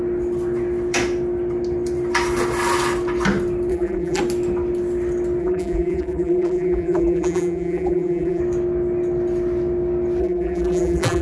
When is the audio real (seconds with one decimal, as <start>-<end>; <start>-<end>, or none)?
0.0-3.7; 4.2-5.4; 8.4-10.2